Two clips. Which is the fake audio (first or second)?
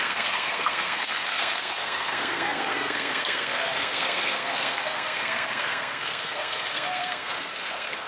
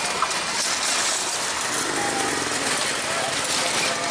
first